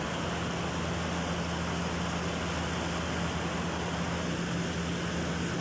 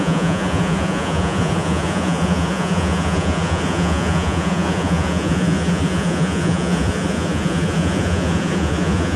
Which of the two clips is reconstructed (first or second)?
second